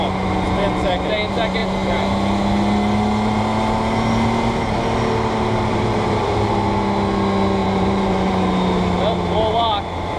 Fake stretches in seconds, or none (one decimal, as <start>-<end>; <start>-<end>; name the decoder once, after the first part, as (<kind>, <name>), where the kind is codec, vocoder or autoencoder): 5.7-6.5 (vocoder, BigVGAN v2); 7.6-8.3